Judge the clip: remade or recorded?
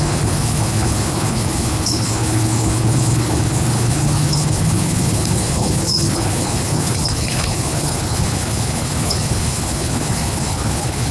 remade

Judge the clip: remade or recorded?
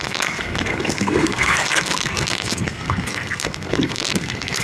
remade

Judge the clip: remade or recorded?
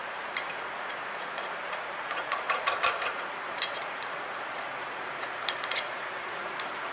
remade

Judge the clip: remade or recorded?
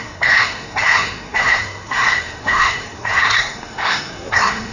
remade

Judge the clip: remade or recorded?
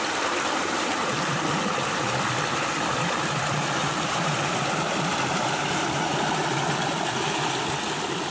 remade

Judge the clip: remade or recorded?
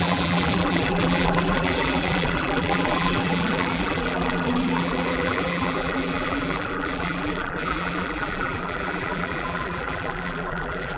remade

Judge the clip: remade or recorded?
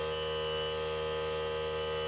recorded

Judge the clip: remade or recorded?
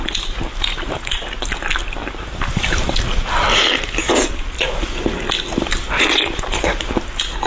recorded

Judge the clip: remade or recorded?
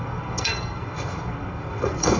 remade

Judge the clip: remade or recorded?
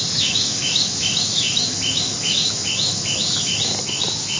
remade